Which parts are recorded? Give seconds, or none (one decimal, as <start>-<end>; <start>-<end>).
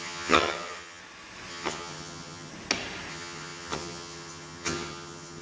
1.0-1.5; 2.5-3.1